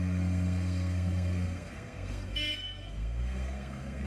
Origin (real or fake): fake